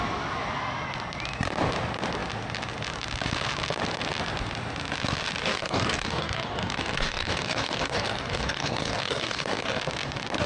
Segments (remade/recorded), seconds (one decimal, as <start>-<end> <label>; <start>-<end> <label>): 0.0-5.4 recorded; 5.4-9.8 remade; 9.8-10.5 recorded